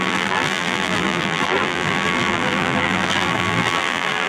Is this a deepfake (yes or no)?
yes